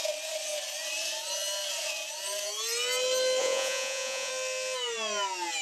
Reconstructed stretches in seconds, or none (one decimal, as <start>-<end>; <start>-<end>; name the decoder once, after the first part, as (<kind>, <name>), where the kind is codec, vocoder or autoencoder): 3.4-4.3 (vocoder, Vocos)